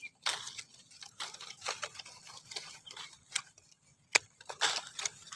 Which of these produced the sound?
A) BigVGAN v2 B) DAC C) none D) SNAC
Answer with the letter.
C